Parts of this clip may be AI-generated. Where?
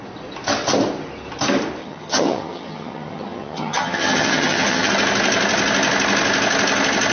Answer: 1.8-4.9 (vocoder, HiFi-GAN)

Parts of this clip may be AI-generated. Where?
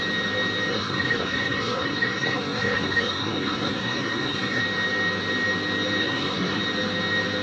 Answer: 0.7-4.6 (codec, SNAC); 6.0-6.6